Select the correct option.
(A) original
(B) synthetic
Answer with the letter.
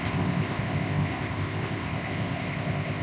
B